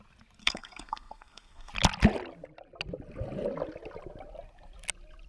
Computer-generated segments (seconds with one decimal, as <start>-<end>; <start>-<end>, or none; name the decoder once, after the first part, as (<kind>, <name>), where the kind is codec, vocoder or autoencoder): 0.4-1.7 (codec, SNAC)